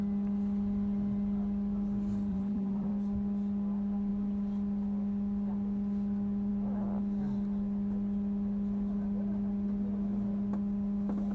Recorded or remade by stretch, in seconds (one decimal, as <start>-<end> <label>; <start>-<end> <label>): 0.0-2.3 recorded; 2.3-2.9 remade; 2.9-11.3 recorded